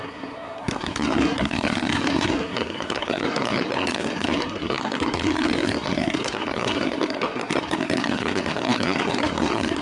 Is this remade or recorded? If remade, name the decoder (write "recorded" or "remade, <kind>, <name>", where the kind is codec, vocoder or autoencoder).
remade, codec, SNAC